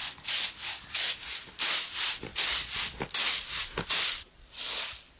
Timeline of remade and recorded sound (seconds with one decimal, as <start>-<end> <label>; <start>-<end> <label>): 0.0-0.5 remade; 0.5-5.2 recorded